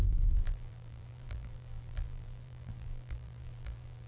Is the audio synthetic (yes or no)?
yes